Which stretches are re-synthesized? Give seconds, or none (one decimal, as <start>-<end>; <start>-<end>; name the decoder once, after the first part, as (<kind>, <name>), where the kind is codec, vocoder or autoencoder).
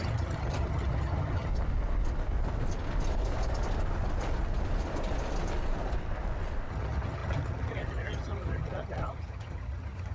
0.0-1.5 (vocoder, HiFi-GAN); 6.7-10.1